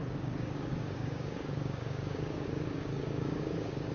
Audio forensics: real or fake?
fake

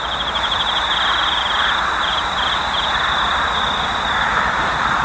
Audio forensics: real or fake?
real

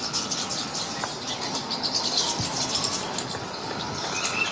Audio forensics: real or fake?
real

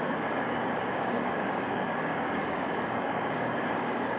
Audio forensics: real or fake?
fake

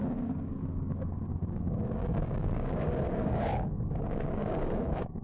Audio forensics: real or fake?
fake